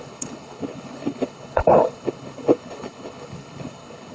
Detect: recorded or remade remade